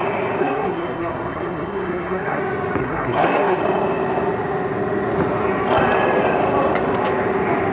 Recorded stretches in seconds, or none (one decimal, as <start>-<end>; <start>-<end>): 0.0-0.4; 2.4-2.8; 3.6-7.7